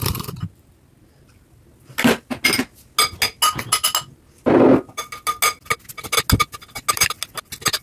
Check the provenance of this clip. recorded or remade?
recorded